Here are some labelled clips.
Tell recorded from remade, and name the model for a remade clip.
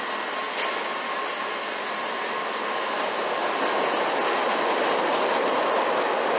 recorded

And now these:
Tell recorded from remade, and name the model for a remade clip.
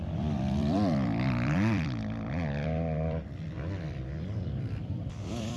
remade, vocoder, BigVGAN v2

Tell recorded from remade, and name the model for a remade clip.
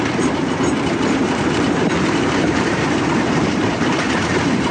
remade, vocoder, BigVGAN v2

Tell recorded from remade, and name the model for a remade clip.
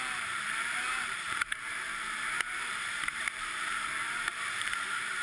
remade, vocoder, BigVGAN v2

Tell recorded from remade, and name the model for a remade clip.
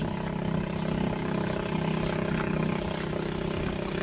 recorded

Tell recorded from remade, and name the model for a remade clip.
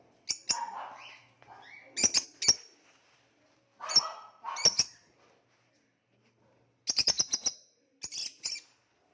recorded